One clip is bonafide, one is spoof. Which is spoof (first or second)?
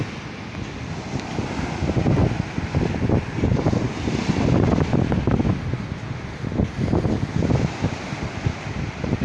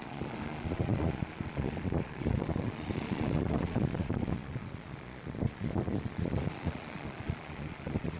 second